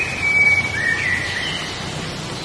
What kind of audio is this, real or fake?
real